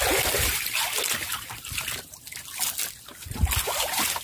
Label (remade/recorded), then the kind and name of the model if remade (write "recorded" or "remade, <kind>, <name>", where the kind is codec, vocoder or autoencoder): recorded